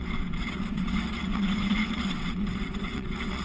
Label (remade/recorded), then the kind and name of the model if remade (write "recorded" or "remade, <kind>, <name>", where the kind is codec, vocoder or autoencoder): remade, vocoder, WaveNeXt